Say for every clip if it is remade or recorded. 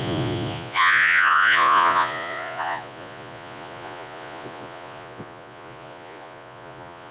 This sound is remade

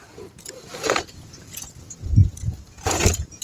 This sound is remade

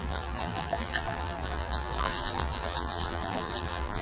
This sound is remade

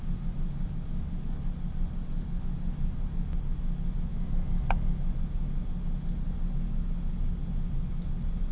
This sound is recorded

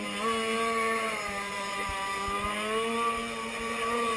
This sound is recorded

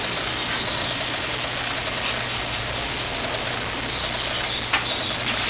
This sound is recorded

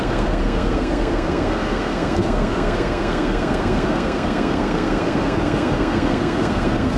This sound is remade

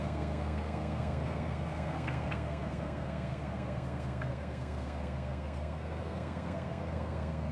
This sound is remade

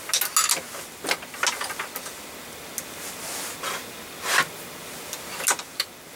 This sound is recorded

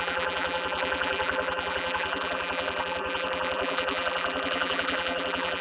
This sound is remade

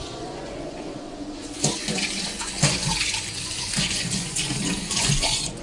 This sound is remade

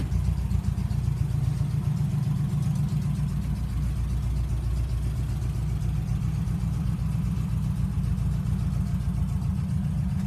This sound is recorded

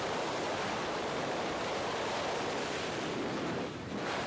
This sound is remade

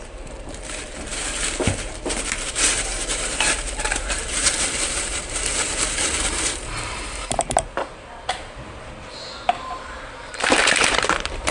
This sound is remade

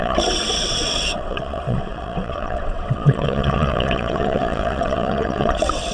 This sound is remade